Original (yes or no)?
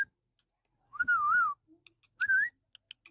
yes